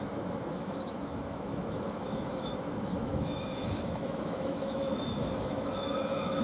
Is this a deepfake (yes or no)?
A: yes